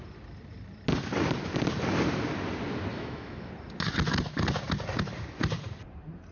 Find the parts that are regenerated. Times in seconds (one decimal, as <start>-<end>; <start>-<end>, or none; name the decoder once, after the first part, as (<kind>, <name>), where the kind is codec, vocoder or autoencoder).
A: 2.9-3.5 (autoencoder, DAC-VAE)